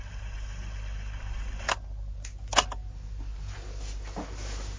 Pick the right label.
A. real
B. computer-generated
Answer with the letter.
A